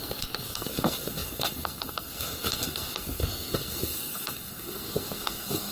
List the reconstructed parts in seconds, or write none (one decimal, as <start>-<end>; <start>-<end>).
0.0-5.7